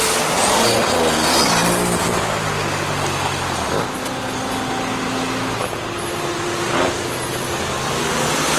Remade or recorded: recorded